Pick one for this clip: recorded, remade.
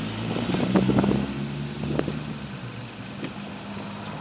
recorded